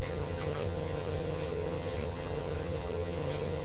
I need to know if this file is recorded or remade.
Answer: remade